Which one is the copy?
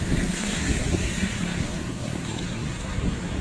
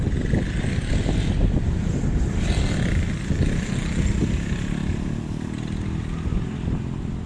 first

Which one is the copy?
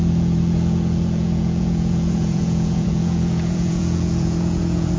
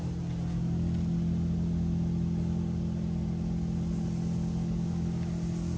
first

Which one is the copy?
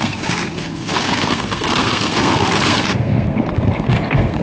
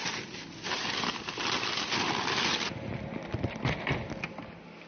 first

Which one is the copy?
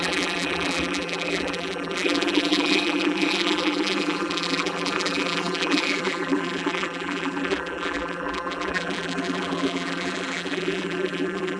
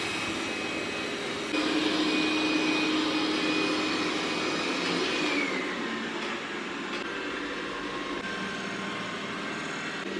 first